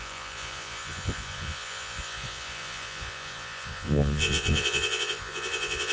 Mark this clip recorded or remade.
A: remade